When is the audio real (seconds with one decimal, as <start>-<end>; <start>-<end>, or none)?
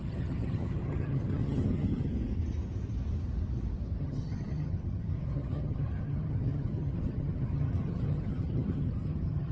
2.1-4.0